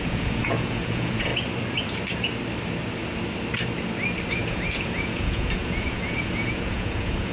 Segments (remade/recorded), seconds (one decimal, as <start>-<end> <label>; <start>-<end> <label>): 0.0-1.3 remade; 1.3-4.3 recorded; 4.3-7.3 remade